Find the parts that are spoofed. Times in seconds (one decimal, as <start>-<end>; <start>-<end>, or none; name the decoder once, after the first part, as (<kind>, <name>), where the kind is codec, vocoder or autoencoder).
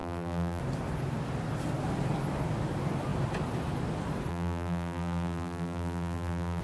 0.0-0.6 (vocoder, BigVGAN v2); 4.3-6.6